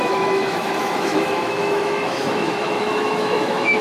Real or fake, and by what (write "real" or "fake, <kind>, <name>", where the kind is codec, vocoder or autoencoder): fake, autoencoder, DAC-VAE